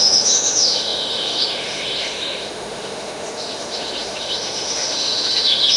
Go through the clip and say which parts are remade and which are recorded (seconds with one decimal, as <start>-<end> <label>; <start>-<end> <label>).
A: 0.0-5.8 remade